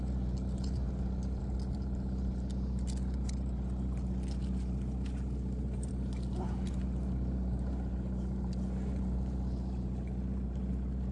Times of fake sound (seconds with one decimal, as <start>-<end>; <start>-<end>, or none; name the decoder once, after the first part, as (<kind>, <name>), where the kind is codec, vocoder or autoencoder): none